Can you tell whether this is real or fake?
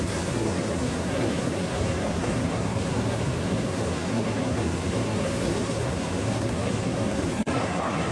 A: fake